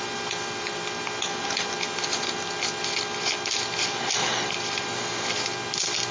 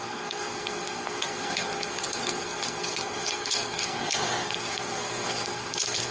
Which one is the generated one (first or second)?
second